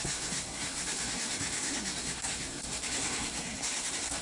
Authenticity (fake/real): fake